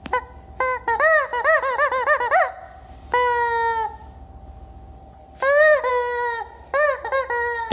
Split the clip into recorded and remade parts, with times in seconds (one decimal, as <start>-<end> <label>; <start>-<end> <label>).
0.0-7.7 recorded